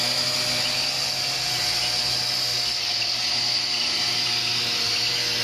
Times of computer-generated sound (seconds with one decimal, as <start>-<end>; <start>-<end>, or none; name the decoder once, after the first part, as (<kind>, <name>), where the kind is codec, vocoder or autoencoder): none